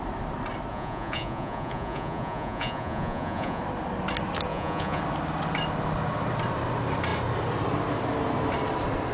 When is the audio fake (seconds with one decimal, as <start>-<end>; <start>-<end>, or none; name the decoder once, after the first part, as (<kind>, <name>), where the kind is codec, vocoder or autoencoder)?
0.7-3.6 (vocoder, Vocos); 4.5-5.0